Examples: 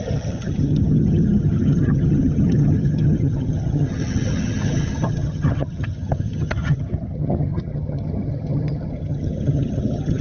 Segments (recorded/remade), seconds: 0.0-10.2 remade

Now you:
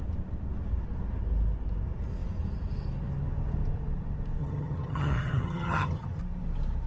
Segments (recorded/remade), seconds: 0.0-4.4 recorded; 4.4-6.2 remade; 6.2-6.9 recorded

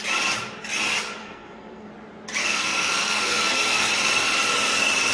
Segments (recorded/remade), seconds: 0.0-1.2 recorded; 1.2-1.9 remade; 1.9-2.4 recorded; 2.4-3.9 remade; 3.9-5.1 recorded

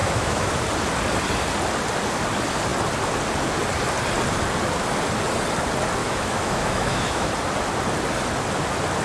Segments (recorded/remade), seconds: 0.0-0.5 remade; 0.5-6.0 recorded; 6.0-7.3 remade; 7.3-9.0 recorded

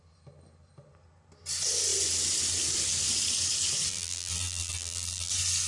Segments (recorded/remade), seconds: 0.0-3.9 recorded; 3.9-5.3 remade; 5.3-5.7 recorded